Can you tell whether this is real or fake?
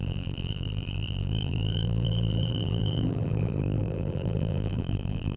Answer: fake